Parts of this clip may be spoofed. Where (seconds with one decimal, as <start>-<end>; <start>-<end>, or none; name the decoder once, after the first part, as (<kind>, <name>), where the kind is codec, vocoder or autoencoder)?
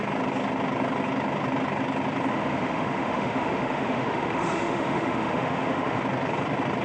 2.3-6.0 (autoencoder, DAC-VAE)